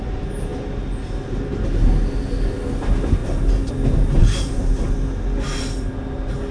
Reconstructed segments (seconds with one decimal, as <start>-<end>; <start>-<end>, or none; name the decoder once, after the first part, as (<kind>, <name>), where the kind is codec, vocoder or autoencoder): none